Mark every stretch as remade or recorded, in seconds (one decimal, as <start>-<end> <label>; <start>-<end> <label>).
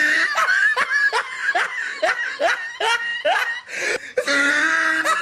0.0-1.4 recorded; 1.4-2.3 remade; 2.3-5.2 recorded